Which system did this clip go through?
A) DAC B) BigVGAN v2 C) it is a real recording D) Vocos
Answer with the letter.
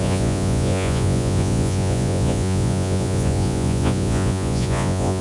D